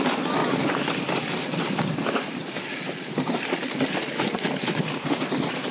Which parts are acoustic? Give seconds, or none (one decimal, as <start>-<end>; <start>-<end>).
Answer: 0.0-5.7